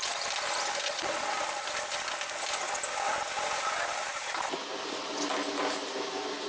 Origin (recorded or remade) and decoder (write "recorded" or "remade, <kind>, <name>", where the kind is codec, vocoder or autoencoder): recorded